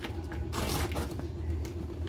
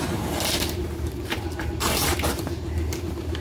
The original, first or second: first